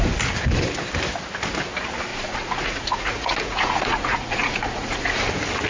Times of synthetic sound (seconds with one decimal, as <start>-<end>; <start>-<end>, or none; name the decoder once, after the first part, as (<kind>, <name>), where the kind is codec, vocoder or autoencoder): 2.1-5.3 (vocoder, Vocos)